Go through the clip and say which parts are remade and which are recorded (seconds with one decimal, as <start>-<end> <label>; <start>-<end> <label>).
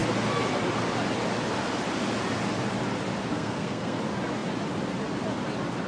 0.0-3.3 recorded; 3.3-4.0 remade; 4.0-5.9 recorded